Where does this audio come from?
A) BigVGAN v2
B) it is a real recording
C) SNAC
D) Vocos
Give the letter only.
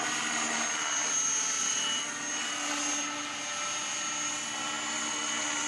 B